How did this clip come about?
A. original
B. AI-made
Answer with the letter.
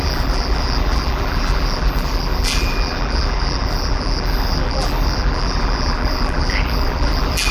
B